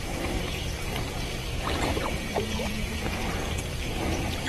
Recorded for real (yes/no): no